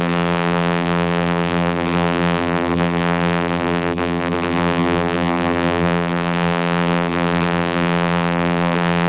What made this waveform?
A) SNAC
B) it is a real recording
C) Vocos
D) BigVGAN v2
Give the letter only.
D